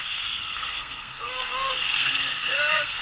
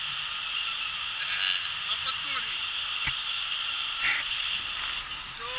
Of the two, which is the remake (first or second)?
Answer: first